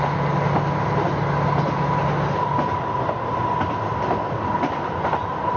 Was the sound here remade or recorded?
recorded